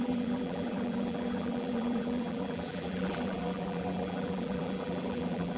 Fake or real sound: fake